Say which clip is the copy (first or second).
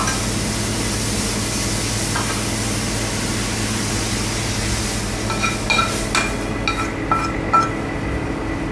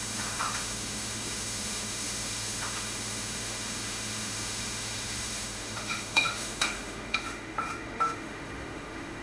second